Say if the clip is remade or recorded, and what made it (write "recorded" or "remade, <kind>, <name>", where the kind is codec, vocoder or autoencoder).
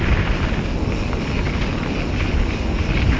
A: recorded